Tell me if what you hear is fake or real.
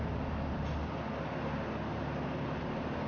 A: real